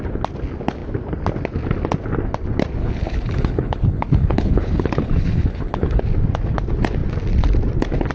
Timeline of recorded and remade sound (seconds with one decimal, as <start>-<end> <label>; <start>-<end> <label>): 0.0-2.8 recorded; 2.8-6.0 remade; 6.0-8.1 recorded